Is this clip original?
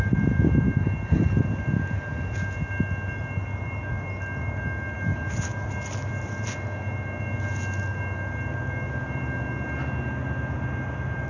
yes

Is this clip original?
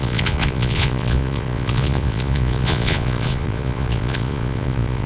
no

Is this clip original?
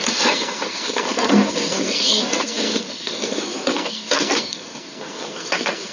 no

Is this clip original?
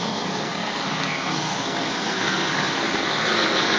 no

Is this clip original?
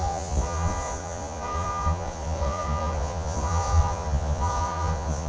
no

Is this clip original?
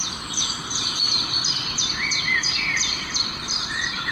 no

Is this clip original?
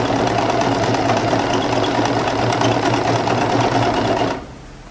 yes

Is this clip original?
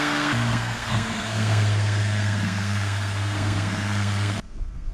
no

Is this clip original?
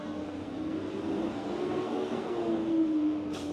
no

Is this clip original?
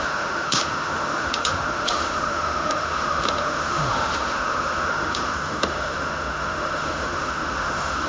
no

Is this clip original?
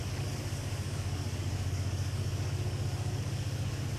no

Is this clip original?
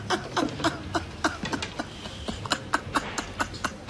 yes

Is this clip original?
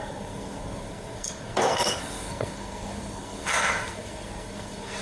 no